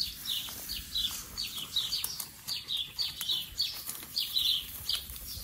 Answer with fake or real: real